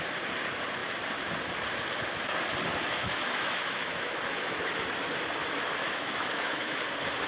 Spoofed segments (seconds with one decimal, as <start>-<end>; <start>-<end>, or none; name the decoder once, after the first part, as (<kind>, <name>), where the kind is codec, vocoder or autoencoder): 2.7-4.7 (autoencoder, DAC-VAE); 5.8-6.8